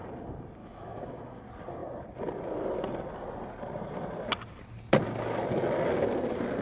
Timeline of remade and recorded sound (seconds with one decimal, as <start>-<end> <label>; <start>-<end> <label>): 0.0-0.6 recorded; 0.6-1.4 remade; 1.4-6.6 recorded